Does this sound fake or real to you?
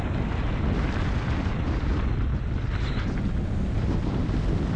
real